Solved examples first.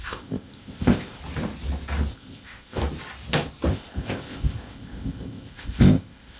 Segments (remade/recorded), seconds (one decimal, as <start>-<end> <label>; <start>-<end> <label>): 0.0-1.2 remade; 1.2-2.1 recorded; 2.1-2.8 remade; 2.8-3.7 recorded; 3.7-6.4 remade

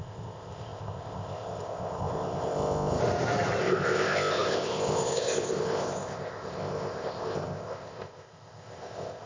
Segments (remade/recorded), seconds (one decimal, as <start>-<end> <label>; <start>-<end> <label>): 0.0-3.0 remade; 3.0-3.6 recorded; 3.6-9.3 remade

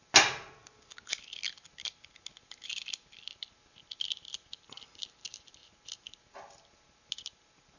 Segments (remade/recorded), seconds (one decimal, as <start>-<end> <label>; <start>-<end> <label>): 0.0-7.8 recorded